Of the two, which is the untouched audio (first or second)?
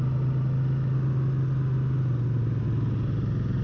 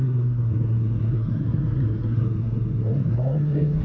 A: first